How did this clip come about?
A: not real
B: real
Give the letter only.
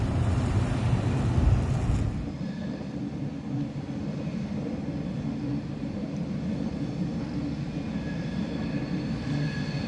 B